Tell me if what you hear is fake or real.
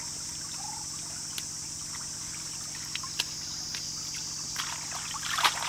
real